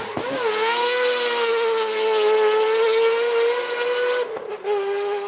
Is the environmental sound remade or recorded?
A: recorded